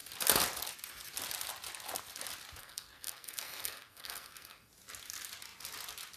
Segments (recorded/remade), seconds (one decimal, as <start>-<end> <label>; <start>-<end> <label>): 0.0-2.6 recorded; 2.6-4.7 remade; 4.7-6.2 recorded